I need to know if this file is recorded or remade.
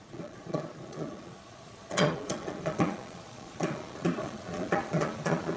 remade